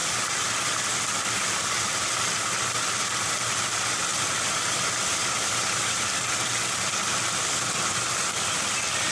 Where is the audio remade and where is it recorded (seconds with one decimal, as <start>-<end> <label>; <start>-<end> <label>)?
0.0-4.1 recorded; 4.1-6.5 remade; 6.5-9.1 recorded

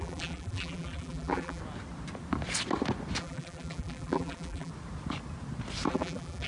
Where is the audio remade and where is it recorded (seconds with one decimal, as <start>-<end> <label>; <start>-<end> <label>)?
0.0-1.6 remade; 1.6-3.2 recorded; 3.2-4.7 remade; 4.7-5.9 recorded; 5.9-6.5 remade

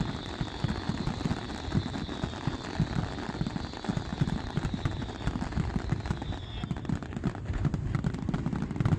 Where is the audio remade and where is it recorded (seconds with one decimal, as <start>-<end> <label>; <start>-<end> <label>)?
0.0-4.1 recorded; 4.1-5.1 remade; 5.1-9.0 recorded

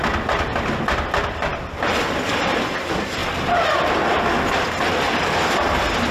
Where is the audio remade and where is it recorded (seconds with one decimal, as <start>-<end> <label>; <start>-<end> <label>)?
0.0-3.2 recorded; 3.2-5.4 remade; 5.4-6.1 recorded

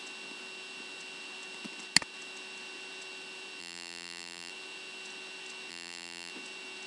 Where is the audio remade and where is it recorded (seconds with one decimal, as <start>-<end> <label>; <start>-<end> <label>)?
0.0-3.6 recorded; 3.6-4.5 remade; 4.5-5.7 recorded; 5.7-6.3 remade; 6.3-6.9 recorded

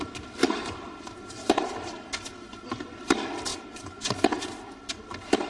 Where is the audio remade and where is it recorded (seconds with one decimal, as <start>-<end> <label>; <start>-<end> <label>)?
0.0-0.4 recorded; 0.4-3.0 remade; 3.0-3.5 recorded; 3.5-4.2 remade; 4.2-5.5 recorded